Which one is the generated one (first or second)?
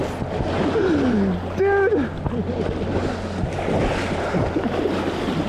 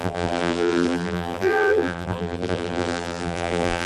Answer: second